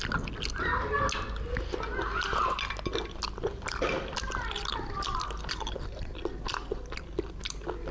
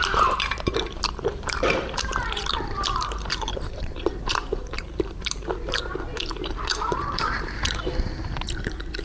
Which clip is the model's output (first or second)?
second